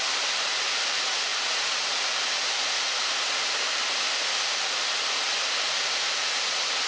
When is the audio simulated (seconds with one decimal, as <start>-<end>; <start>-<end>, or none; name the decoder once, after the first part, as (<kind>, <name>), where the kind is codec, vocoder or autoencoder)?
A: none